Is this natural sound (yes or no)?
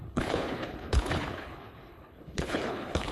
no